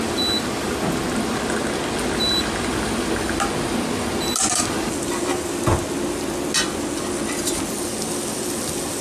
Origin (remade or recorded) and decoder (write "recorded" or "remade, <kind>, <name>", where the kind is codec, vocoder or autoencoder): recorded